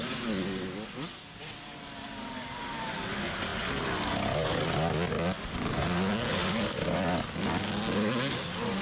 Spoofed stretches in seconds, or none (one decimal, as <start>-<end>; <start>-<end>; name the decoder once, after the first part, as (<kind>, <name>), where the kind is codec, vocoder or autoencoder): none